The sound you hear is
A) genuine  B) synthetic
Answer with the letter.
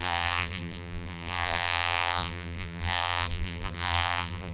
B